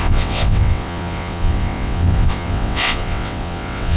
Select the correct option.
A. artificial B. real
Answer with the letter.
A